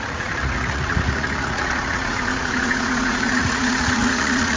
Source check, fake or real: fake